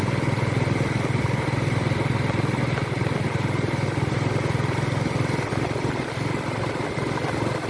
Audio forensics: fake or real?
real